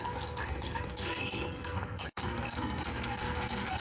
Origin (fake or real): fake